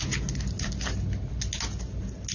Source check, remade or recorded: recorded